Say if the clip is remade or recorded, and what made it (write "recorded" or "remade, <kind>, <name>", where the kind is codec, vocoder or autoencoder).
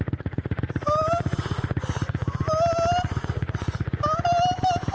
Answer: recorded